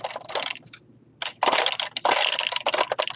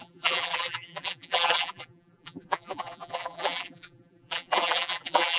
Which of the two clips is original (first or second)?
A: first